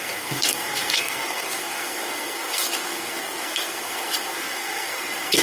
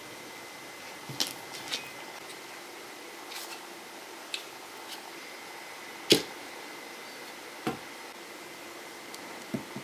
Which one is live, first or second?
second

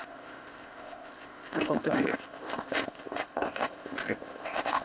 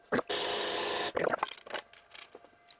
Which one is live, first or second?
second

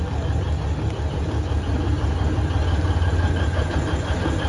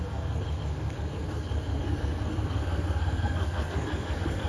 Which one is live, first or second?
first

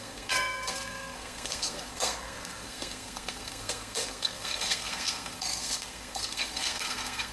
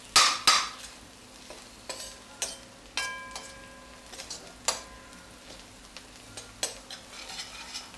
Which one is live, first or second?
second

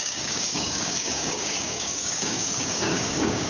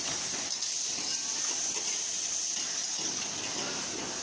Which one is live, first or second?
second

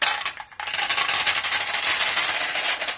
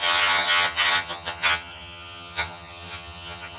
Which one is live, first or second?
first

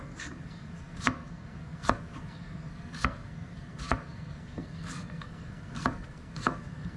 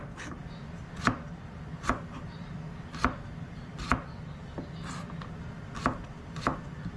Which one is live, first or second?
second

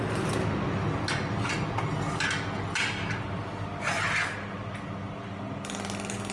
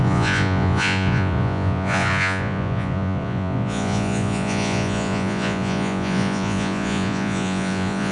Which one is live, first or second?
first